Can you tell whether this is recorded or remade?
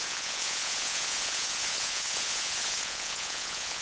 remade